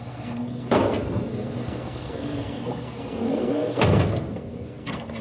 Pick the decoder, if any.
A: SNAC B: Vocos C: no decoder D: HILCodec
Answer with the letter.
A